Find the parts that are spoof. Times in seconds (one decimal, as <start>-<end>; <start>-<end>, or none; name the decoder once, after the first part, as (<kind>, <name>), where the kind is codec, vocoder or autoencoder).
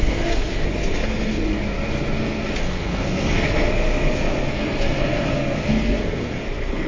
0.0-1.4 (codec, SNAC); 2.2-6.9